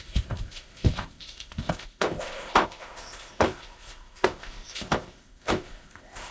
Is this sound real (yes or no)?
no